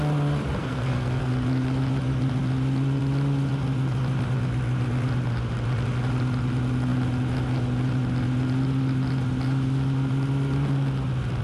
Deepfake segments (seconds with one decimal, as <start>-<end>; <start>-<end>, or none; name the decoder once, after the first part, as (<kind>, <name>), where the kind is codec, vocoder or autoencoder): 0.6-1.3 (codec, SNAC)